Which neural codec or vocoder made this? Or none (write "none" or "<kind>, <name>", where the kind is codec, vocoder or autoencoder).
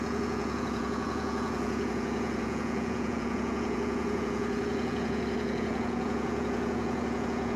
vocoder, Vocos